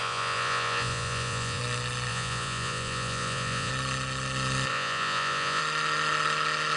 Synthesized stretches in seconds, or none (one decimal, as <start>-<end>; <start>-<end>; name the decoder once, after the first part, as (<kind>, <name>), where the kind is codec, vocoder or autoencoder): 0.0-1.6 (vocoder, Vocos); 2.1-3.7; 4.7-5.6